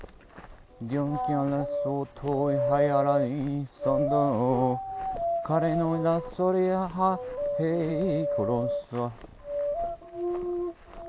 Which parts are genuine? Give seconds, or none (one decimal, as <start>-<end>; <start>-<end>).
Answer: 0.0-11.1